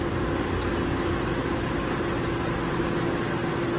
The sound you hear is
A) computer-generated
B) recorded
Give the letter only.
B